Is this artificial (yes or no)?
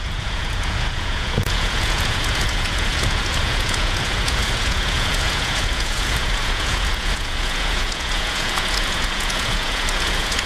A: yes